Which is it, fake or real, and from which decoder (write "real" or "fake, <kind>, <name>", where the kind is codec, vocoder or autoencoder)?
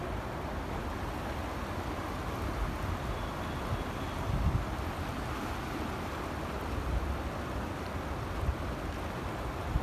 real